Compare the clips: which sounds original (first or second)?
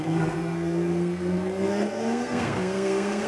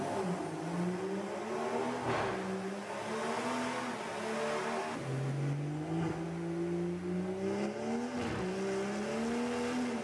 second